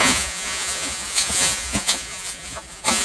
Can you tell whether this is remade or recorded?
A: remade